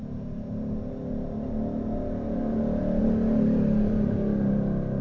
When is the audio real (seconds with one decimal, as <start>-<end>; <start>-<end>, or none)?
0.0-5.0